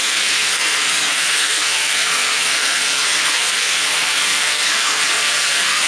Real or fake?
fake